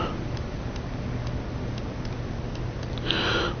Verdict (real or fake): real